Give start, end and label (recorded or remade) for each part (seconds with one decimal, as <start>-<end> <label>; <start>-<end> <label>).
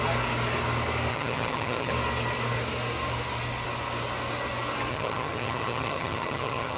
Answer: 0.0-1.1 recorded; 1.1-1.9 remade; 1.9-4.9 recorded; 4.9-6.8 remade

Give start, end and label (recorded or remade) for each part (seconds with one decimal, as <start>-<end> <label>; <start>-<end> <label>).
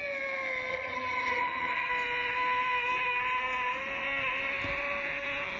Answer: 0.0-0.7 recorded; 0.7-1.9 remade; 1.9-5.6 recorded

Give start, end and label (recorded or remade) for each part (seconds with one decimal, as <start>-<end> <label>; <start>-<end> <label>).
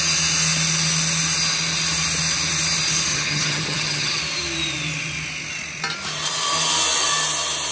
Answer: 0.0-3.1 recorded; 3.1-4.2 remade; 4.2-7.7 recorded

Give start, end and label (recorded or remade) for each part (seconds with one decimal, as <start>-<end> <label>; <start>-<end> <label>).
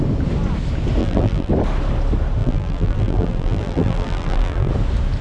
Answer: 0.0-1.0 recorded; 1.0-1.5 remade; 1.5-2.4 recorded; 2.4-4.7 remade; 4.7-5.2 recorded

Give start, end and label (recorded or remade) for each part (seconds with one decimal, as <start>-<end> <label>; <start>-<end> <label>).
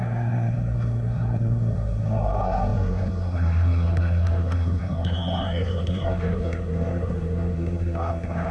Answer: 0.0-8.5 remade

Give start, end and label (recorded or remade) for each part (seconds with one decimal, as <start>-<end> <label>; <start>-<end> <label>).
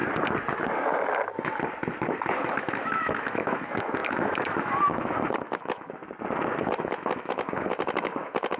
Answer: 0.0-2.4 recorded; 2.4-6.0 remade; 6.0-6.6 recorded; 6.6-8.6 remade